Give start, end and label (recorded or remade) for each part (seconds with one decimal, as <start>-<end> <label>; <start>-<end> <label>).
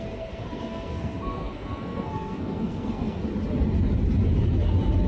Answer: 0.0-3.2 remade; 3.2-5.1 recorded